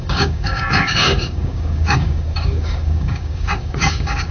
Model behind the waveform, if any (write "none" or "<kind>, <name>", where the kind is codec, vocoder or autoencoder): codec, DAC